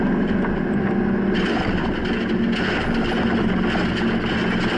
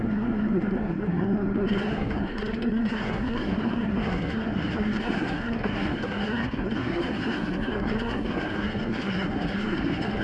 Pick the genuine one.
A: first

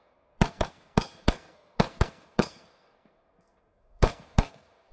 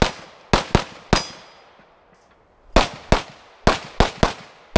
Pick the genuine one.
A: second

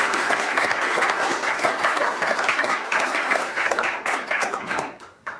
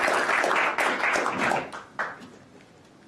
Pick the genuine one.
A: second